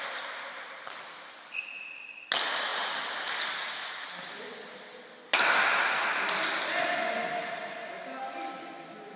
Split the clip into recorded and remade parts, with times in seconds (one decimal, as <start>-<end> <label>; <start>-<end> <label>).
0.0-9.2 recorded